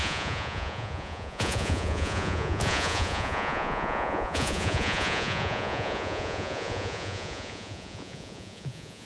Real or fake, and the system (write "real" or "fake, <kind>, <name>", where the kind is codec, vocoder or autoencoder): fake, vocoder, Vocos